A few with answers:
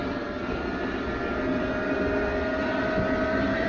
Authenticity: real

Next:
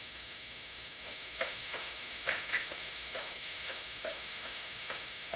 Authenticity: fake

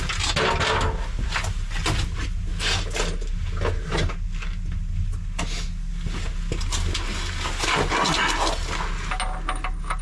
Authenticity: real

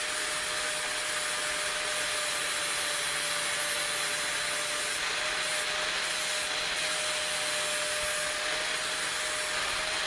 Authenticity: real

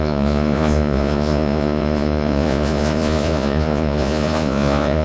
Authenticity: fake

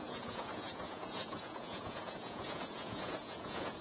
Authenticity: fake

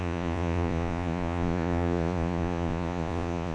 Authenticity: fake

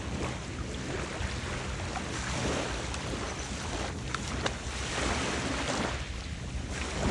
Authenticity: real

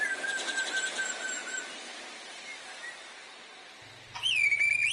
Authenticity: real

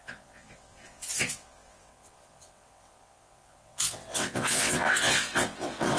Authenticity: fake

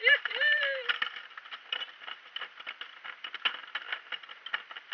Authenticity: real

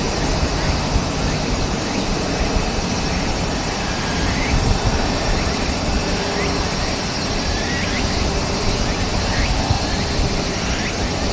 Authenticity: real